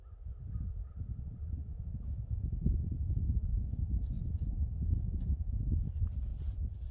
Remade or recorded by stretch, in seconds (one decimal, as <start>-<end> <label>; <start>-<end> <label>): 0.0-1.6 recorded; 1.6-5.7 remade; 5.7-6.9 recorded